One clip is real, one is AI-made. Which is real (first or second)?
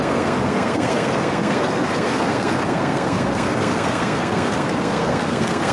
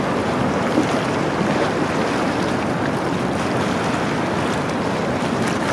second